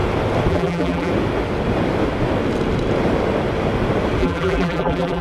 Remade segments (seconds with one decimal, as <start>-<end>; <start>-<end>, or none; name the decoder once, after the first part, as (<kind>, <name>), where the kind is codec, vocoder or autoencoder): 0.5-1.1 (vocoder, BigVGAN v2); 4.2-5.2